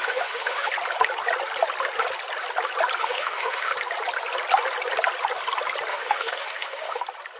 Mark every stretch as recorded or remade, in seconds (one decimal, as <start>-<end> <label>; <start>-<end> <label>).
0.0-0.7 remade; 0.7-3.0 recorded; 3.0-3.7 remade; 3.7-5.9 recorded; 5.9-7.0 remade; 7.0-7.4 recorded